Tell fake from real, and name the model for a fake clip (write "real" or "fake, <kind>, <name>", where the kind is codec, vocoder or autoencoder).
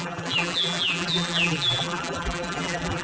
fake, vocoder, BigVGAN v2